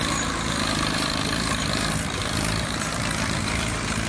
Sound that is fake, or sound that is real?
fake